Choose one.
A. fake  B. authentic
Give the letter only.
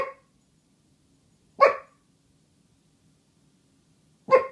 B